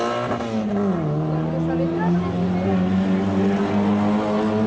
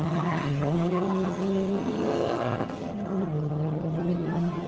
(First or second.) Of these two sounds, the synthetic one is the second